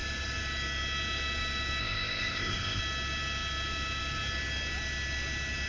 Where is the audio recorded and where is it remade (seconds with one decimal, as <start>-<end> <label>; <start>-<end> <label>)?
0.0-1.8 recorded; 1.8-2.8 remade; 2.8-5.7 recorded